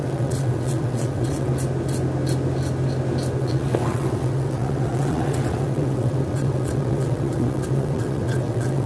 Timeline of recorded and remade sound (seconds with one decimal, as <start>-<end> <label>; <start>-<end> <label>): 0.0-1.5 remade; 1.5-3.4 recorded; 3.4-8.9 remade